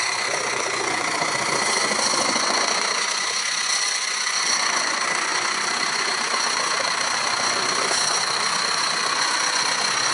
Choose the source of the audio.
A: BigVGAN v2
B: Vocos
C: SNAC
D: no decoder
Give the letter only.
B